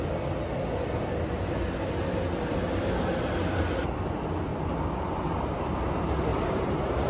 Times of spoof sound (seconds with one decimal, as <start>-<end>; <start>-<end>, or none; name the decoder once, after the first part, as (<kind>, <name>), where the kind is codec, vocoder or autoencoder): 4.5-5.6 (vocoder, BigVGAN v2); 6.3-7.1